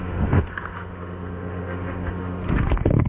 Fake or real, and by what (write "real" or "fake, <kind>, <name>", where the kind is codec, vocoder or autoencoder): fake, autoencoder, DAC-VAE